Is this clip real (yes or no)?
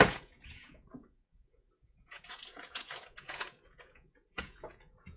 no